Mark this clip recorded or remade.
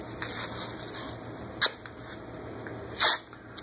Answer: recorded